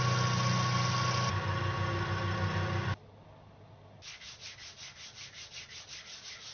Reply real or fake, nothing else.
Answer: real